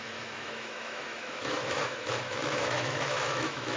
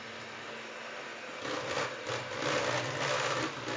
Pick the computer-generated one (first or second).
first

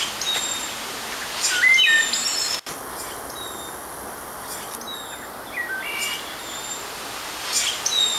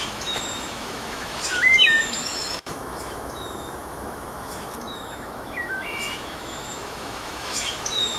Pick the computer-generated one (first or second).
second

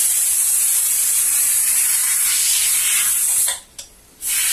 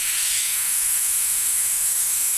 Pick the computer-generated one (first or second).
second